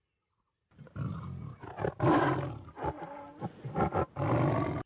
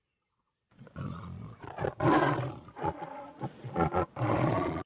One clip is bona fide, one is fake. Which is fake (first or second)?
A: second